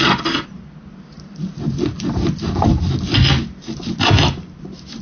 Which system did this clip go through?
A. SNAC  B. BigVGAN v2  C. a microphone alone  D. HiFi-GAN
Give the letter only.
C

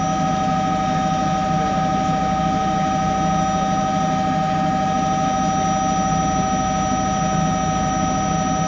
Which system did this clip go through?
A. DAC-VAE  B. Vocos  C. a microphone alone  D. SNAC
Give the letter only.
C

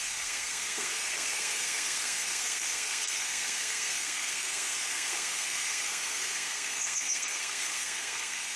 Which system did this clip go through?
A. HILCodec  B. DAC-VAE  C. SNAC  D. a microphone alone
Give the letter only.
C